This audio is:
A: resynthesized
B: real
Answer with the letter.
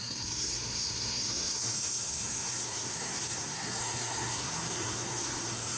A